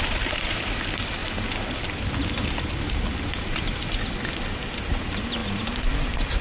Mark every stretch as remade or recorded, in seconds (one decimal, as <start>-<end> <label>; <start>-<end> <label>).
0.0-6.4 recorded